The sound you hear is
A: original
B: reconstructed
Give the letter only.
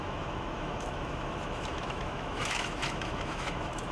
B